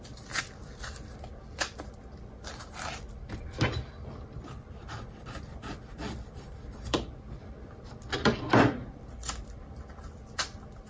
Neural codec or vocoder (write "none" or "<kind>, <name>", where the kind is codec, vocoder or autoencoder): vocoder, BigVGAN v2